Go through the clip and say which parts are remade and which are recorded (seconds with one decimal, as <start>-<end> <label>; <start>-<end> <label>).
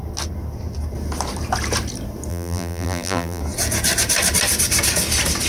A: 0.0-2.3 recorded; 2.3-3.4 remade; 3.4-5.5 recorded